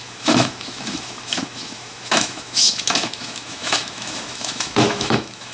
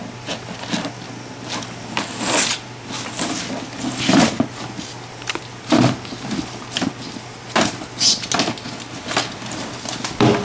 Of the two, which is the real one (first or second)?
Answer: second